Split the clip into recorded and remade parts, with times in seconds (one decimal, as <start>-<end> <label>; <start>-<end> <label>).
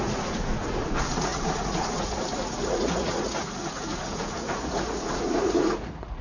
0.0-6.2 remade